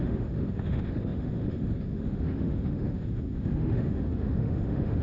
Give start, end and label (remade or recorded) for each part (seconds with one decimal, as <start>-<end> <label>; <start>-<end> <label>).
0.0-5.0 remade